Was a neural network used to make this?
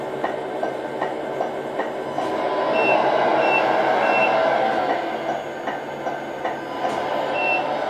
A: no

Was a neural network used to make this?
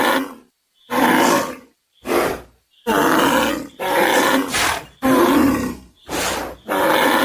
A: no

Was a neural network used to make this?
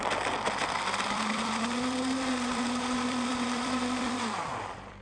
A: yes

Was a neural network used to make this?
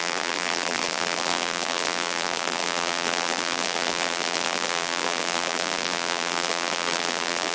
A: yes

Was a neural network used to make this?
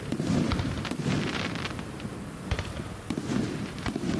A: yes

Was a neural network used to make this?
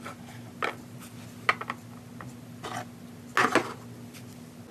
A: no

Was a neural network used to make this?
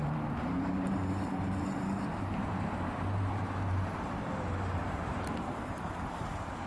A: yes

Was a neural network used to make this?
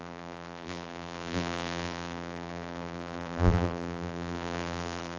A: yes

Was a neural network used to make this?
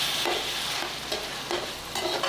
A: no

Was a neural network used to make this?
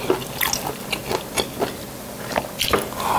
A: no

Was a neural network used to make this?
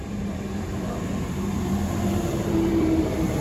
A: yes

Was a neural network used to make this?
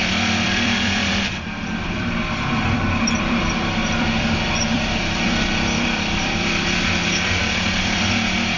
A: yes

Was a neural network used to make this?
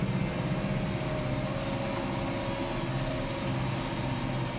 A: no